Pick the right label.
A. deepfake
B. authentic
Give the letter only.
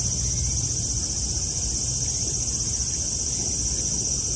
B